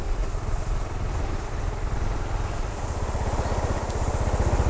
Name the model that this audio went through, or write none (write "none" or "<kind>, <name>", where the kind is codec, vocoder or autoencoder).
none